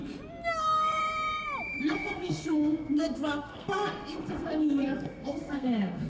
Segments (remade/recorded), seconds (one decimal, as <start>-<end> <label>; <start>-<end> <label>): 0.0-0.6 recorded; 0.6-1.0 remade; 1.0-1.8 recorded; 1.8-6.1 remade